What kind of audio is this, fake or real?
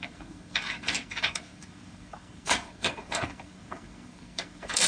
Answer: fake